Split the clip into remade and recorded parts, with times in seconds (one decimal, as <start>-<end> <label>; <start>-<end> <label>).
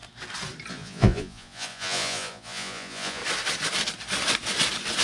0.0-0.7 recorded; 0.7-3.2 remade; 3.2-5.0 recorded